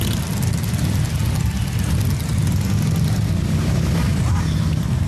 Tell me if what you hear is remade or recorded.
recorded